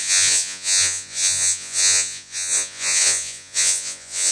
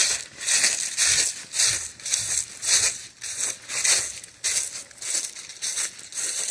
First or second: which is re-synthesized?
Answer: first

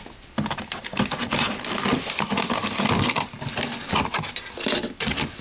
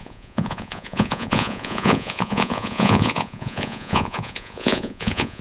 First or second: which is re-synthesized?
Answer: second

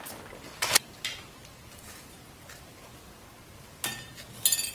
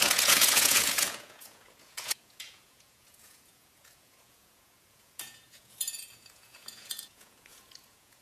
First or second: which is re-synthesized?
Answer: second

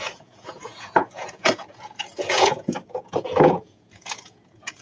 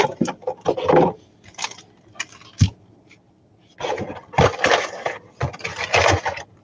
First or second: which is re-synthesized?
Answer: first